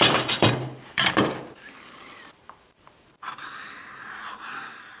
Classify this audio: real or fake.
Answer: fake